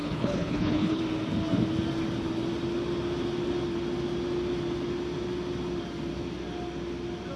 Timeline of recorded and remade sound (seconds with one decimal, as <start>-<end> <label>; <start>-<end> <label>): 0.0-1.0 remade; 1.0-7.4 recorded